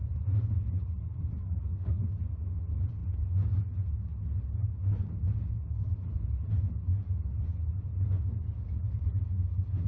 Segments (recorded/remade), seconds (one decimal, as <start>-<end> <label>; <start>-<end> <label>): 0.0-1.4 recorded; 1.4-2.0 remade; 2.0-9.9 recorded